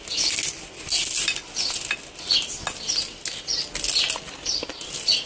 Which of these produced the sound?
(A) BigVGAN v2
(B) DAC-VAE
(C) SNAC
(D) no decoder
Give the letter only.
D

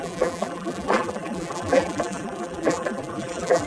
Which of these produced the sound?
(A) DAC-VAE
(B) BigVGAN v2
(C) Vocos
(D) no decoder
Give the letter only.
B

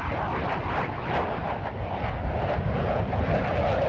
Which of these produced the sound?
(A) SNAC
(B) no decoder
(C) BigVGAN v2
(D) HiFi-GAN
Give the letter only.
B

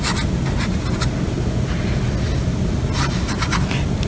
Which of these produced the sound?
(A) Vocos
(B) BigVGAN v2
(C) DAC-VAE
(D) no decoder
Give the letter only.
D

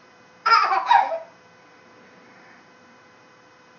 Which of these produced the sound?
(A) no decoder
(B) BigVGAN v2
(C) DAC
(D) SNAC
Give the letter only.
B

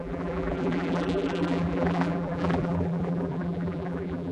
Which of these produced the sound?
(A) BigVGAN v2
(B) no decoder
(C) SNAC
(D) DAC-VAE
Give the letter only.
A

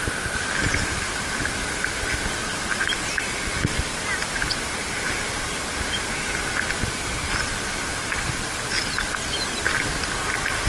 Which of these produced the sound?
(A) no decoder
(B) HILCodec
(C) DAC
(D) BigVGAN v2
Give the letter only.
A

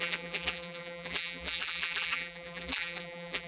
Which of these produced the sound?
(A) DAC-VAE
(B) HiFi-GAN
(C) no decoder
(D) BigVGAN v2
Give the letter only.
D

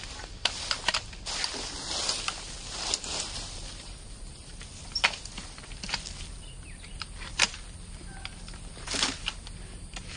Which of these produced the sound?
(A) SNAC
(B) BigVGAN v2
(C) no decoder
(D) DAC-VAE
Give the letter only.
B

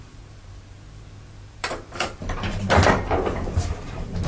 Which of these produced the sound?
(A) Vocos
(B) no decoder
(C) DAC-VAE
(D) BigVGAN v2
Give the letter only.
D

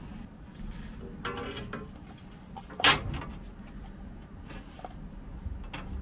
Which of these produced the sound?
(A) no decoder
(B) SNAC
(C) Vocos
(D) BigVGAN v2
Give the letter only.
A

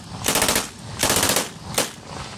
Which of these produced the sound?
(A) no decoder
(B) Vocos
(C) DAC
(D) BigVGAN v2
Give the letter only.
A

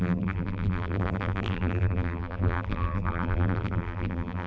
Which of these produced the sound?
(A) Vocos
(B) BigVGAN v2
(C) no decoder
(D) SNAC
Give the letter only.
B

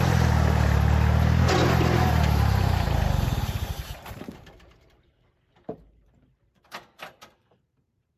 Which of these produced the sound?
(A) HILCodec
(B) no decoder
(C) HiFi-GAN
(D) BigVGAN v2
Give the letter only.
D